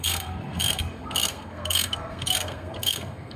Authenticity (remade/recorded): remade